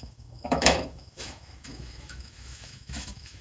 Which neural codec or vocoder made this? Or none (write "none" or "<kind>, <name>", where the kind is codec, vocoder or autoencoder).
autoencoder, DAC-VAE